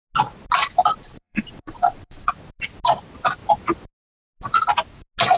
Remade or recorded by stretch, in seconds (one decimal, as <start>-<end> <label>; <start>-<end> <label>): 0.0-0.9 recorded; 0.9-2.3 remade; 2.3-5.4 recorded